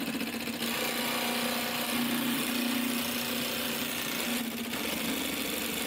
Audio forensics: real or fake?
real